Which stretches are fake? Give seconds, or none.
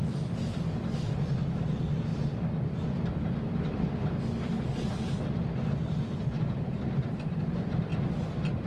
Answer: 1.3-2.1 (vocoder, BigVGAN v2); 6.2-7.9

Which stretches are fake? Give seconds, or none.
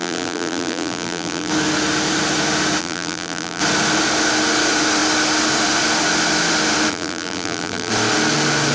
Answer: 0.0-1.5 (vocoder, BigVGAN v2); 2.8-3.6; 6.9-7.9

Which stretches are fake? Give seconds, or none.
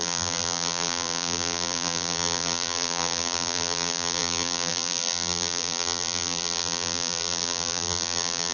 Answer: 0.0-8.5 (vocoder, BigVGAN v2)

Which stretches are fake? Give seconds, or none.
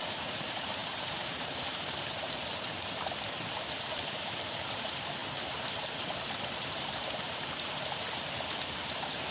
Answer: 0.0-5.2 (vocoder, BigVGAN v2); 6.0-9.3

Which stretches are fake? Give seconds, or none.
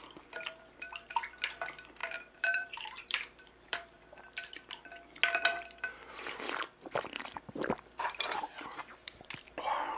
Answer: 2.0-4.2 (vocoder, BigVGAN v2)